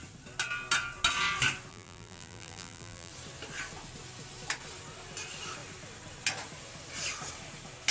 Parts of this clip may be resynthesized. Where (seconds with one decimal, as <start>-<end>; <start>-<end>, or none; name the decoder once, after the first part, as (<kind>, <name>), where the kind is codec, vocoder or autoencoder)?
1.7-3.1 (vocoder, BigVGAN v2)